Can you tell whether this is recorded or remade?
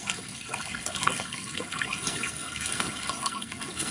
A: remade